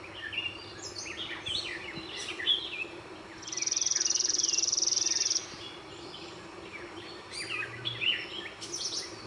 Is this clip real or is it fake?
real